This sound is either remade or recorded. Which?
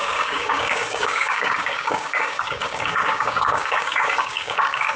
remade